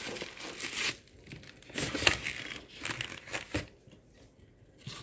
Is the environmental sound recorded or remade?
recorded